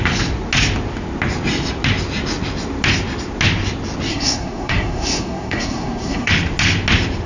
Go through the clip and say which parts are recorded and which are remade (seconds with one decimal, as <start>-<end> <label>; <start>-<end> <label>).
0.0-4.1 recorded; 4.1-6.3 remade; 6.3-7.3 recorded